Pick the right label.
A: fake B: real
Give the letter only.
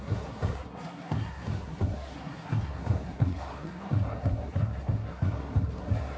A